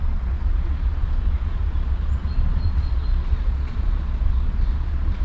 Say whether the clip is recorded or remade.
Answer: remade